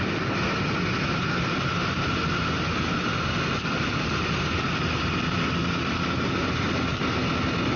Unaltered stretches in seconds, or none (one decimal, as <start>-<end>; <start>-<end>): 0.0-7.8